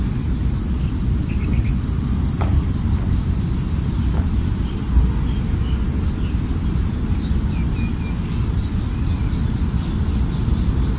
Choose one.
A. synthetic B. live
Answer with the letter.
B